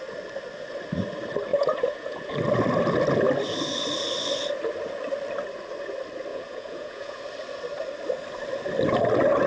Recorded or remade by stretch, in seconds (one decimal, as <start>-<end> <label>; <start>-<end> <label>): 0.0-1.5 recorded; 1.5-2.3 remade; 2.3-6.3 recorded; 6.3-7.2 remade; 7.2-9.5 recorded